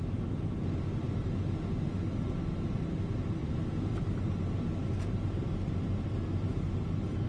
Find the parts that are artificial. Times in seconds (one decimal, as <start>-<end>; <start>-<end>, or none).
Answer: none